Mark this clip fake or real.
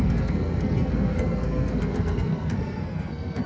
fake